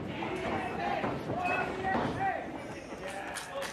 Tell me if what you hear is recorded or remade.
recorded